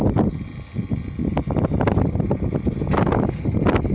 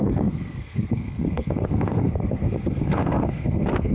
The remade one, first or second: second